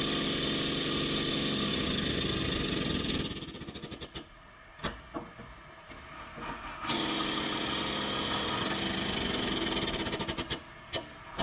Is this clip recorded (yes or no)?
yes